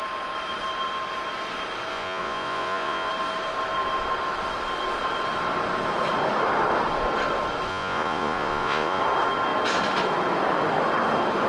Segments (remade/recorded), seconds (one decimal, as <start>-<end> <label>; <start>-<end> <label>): 0.0-1.9 recorded; 1.9-3.1 remade; 3.1-7.7 recorded; 7.7-9.0 remade; 9.0-11.5 recorded